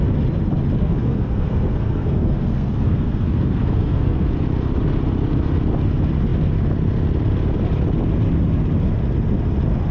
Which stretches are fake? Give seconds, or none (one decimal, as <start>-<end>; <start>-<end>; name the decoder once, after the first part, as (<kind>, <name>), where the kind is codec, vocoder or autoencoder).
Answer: 0.8-4.3 (codec, SNAC)